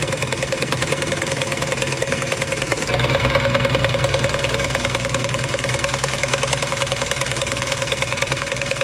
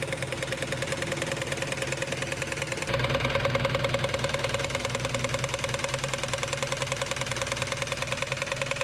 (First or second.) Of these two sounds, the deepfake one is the first